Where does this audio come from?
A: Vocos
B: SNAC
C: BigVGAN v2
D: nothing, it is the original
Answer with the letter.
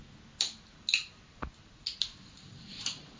D